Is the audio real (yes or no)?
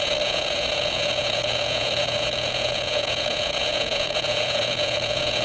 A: no